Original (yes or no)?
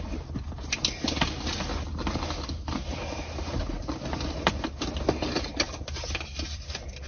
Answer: yes